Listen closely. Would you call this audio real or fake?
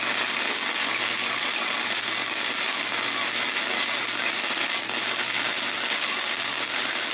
real